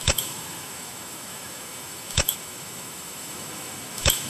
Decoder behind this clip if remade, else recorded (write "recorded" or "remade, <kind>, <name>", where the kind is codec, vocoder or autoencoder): remade, autoencoder, DAC-VAE